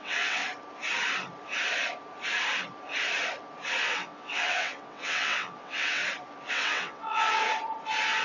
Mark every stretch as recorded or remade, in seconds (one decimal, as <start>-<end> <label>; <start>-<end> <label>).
0.0-0.4 remade; 0.4-3.8 recorded; 3.8-6.0 remade; 6.0-6.5 recorded; 6.5-7.4 remade; 7.4-8.2 recorded